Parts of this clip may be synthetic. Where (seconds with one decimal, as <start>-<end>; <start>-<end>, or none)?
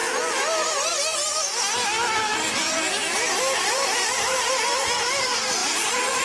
3.4-6.2